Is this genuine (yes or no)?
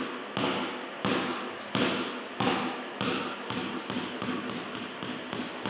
yes